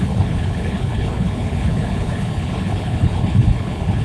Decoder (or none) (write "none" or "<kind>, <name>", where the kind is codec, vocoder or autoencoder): codec, HILCodec